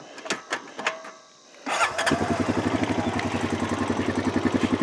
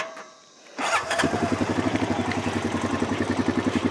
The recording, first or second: first